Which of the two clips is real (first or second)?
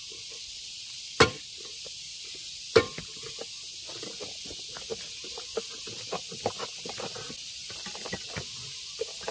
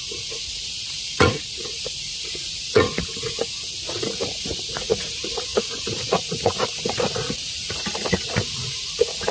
first